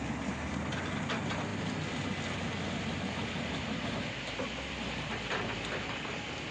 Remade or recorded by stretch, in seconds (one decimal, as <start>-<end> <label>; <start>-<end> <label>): 0.0-6.5 recorded